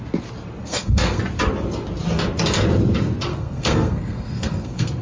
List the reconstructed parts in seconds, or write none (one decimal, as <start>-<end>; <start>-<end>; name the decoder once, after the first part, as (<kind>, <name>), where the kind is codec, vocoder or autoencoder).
0.6-1.2 (codec, SNAC); 3.3-5.0